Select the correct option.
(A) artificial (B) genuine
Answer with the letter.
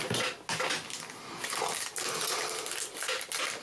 B